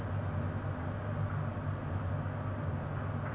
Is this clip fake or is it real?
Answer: real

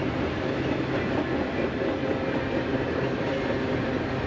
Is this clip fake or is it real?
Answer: real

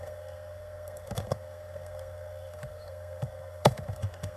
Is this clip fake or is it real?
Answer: fake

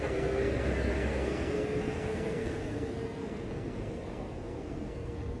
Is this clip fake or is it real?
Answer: fake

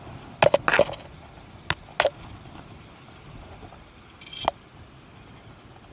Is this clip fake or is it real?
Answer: real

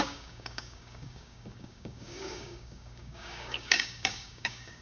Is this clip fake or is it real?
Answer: fake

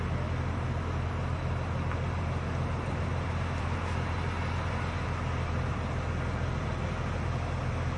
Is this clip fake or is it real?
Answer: real